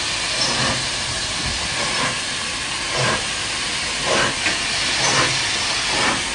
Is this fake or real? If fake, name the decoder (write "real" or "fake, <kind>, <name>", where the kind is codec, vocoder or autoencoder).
real